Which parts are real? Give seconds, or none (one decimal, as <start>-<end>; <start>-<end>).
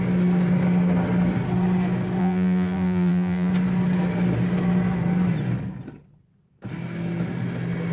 0.0-2.2; 3.5-7.9